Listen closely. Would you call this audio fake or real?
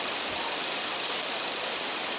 real